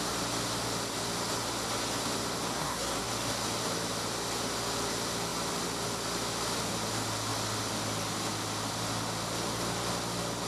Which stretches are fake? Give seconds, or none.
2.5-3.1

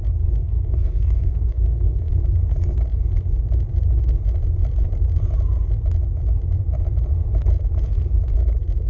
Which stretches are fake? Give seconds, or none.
0.4-2.1

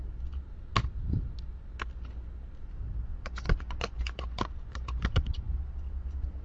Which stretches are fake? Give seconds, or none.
3.1-5.5

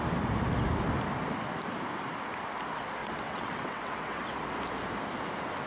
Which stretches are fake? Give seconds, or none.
3.0-4.2

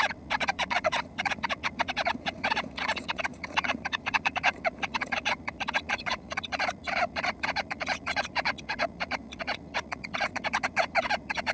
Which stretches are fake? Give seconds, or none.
0.0-11.5

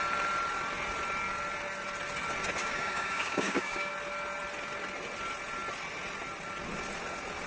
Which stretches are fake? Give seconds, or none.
2.6-3.9

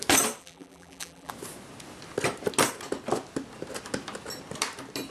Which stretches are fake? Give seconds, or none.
0.4-1.3

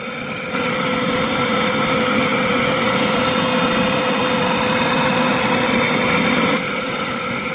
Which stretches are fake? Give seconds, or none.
2.3-3.2